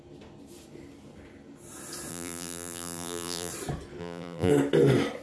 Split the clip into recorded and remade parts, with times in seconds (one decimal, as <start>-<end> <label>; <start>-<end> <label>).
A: 0.0-2.1 recorded; 2.1-3.5 remade; 3.5-4.0 recorded; 4.0-4.5 remade; 4.5-5.2 recorded

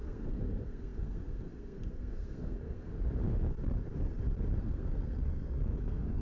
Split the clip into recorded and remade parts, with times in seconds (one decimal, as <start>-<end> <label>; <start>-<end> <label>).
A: 0.0-2.9 remade; 2.9-4.6 recorded; 4.6-6.2 remade